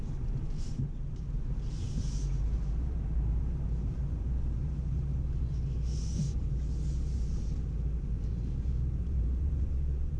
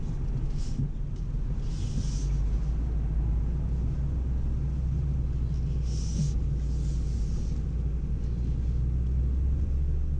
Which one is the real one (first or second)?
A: second